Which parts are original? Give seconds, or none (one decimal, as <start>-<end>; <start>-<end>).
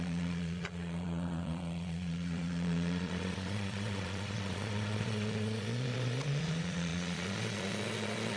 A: none